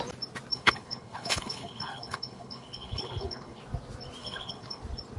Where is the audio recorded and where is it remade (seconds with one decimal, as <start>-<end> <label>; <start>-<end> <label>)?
0.0-0.5 recorded; 0.5-3.6 remade; 3.6-4.2 recorded; 4.2-4.8 remade; 4.8-5.2 recorded